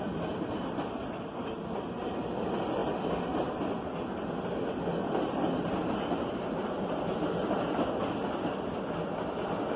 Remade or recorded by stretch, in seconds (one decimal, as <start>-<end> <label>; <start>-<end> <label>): 0.0-9.8 recorded